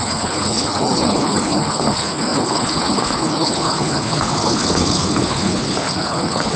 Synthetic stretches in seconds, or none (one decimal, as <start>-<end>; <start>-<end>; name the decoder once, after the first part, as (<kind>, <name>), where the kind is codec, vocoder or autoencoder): 0.0-6.6 (codec, HILCodec)